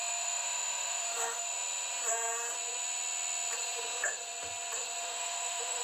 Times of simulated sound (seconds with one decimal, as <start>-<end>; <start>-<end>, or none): 0.0-1.5; 5.0-5.8